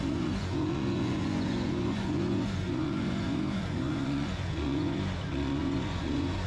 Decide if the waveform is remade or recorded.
remade